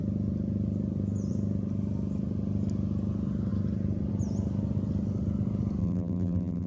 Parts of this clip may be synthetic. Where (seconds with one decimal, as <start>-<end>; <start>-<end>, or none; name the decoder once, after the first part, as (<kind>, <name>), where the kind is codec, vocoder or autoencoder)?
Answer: 5.8-6.7 (vocoder, BigVGAN v2)